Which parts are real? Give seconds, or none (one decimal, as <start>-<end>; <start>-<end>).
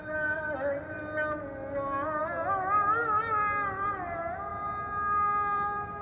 0.0-6.0